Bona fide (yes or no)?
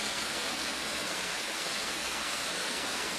no